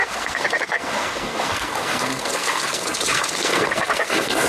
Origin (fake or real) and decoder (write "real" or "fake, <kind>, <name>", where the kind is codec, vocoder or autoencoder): fake, codec, SNAC